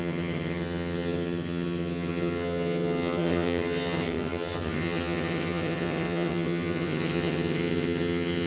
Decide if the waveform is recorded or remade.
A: remade